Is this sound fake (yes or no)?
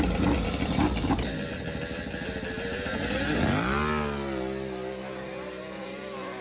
no